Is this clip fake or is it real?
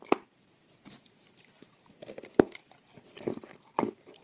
real